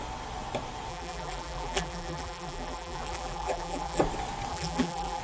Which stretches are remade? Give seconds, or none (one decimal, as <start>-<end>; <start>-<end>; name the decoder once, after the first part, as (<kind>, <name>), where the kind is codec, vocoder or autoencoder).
0.9-4.0 (vocoder, BigVGAN v2); 4.5-5.2